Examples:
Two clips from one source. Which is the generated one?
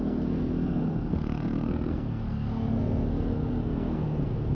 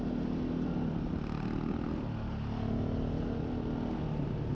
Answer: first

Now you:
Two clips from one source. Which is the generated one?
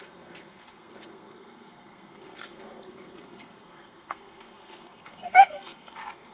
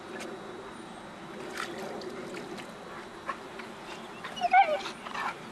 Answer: first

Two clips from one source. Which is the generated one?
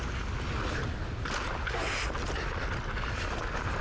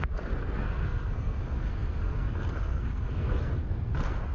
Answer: second